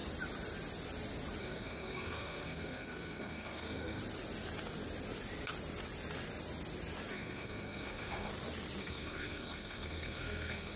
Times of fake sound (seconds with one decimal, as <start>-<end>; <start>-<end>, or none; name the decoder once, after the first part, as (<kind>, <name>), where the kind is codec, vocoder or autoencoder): 1.4-4.0 (codec, SNAC); 7.1-8.3; 8.8-10.8